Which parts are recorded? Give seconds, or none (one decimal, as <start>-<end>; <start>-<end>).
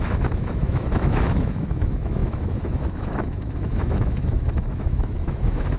none